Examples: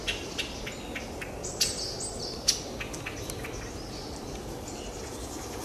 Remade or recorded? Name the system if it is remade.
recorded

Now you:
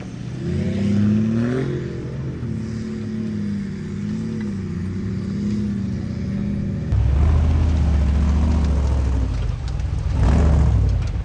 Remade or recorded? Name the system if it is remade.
recorded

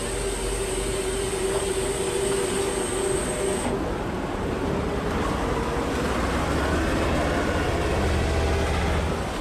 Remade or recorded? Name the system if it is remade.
recorded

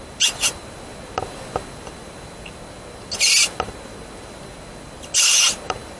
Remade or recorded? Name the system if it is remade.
recorded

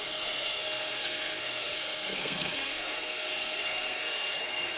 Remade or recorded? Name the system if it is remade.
remade, codec, SNAC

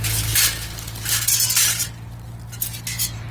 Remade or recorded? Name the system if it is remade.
recorded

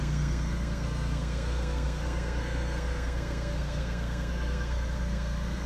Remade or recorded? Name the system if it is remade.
remade, codec, SNAC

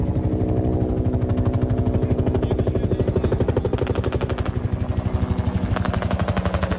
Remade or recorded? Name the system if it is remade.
recorded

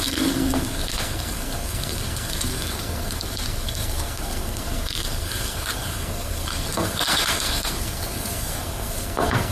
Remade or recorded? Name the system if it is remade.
remade, codec, SNAC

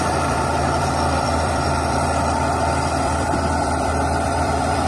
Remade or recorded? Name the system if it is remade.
remade, vocoder, BigVGAN v2